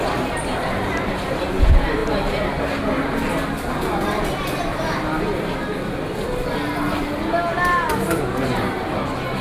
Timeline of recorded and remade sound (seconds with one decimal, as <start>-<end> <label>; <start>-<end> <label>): 0.0-9.4 recorded